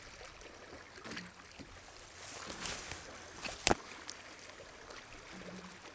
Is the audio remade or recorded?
recorded